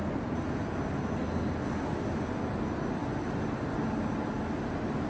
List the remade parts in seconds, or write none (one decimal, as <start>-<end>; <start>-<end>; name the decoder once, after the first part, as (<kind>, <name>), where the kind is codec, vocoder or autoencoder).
3.0-3.7 (vocoder, BigVGAN v2)